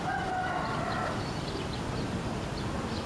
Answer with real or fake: real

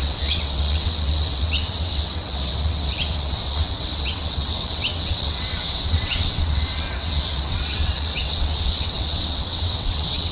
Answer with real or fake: fake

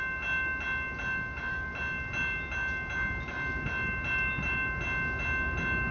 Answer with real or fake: real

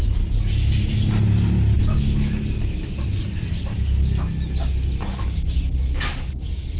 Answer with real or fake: real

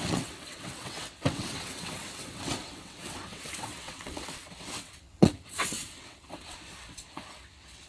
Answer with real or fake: fake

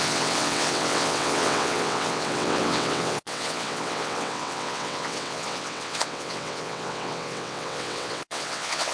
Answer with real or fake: fake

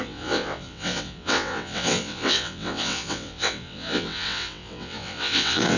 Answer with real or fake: fake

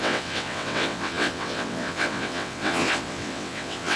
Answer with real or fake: fake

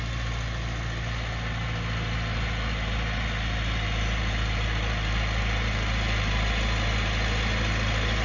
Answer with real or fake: real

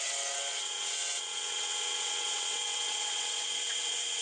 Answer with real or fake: fake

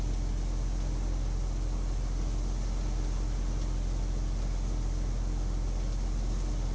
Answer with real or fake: real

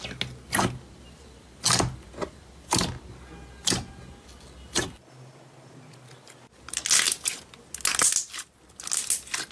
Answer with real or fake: real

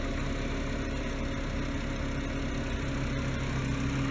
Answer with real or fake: real